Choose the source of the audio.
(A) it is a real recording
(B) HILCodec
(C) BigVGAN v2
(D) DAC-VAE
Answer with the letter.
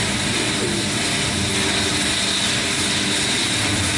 A